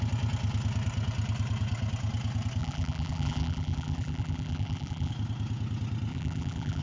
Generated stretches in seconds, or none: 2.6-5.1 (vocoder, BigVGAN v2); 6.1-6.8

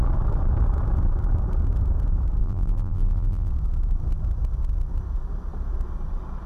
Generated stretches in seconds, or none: 2.4-3.5 (vocoder, BigVGAN v2)